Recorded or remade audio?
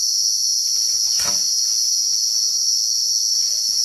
recorded